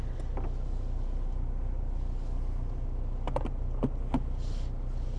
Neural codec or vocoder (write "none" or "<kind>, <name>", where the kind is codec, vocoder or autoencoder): none